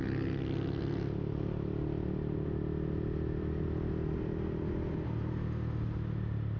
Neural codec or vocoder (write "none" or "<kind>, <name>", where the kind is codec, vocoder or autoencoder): none